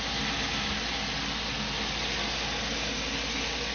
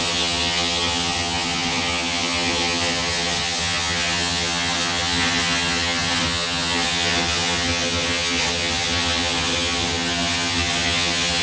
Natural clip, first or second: first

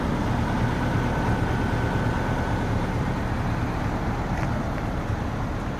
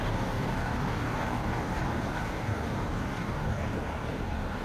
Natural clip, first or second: first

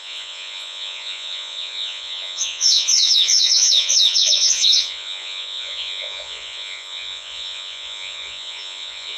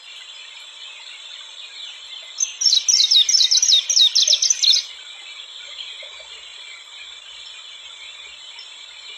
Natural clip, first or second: second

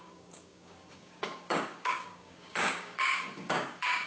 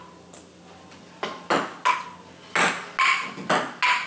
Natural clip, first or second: second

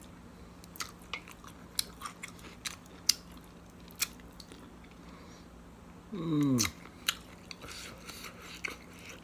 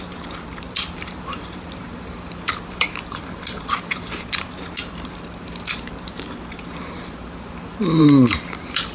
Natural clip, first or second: first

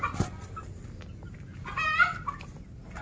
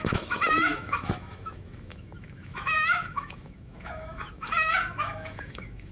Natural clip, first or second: first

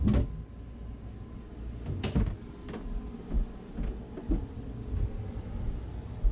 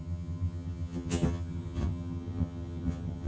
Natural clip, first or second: first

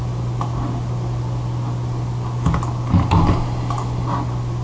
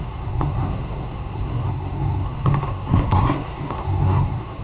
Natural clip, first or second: first